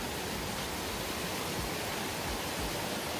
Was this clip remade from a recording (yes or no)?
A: no